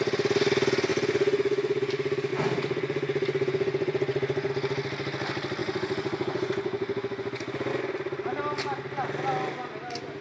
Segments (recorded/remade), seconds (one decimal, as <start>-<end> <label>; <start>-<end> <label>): 0.0-0.9 recorded; 0.9-1.9 remade; 1.9-2.3 recorded; 2.3-4.5 remade; 4.5-5.6 recorded; 5.6-7.7 remade; 7.7-10.2 recorded